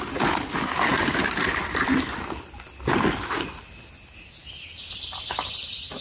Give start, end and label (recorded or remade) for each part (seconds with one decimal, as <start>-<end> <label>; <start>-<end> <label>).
0.0-6.0 recorded